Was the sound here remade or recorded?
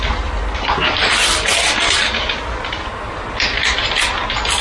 recorded